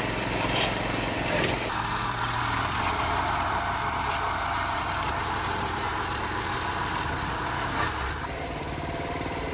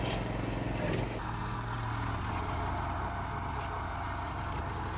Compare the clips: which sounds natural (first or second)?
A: second